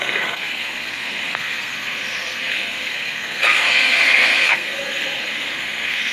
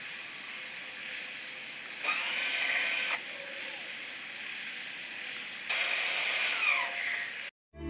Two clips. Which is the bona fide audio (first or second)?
second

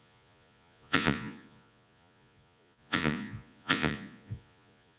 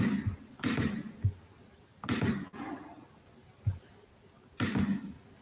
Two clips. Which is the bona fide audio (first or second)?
second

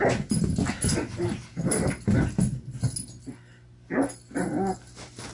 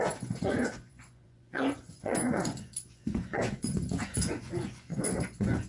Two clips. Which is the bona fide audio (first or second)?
first